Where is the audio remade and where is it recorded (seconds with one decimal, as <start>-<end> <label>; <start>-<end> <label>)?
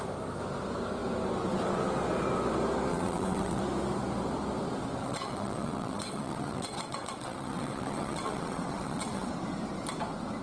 0.0-2.9 recorded; 2.9-3.6 remade; 3.6-5.0 recorded; 5.0-9.3 remade; 9.3-10.4 recorded